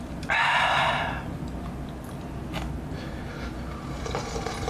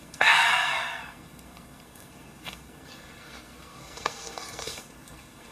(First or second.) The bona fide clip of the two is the first